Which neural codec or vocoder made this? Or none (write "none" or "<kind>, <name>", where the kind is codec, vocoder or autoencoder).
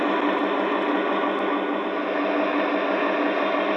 none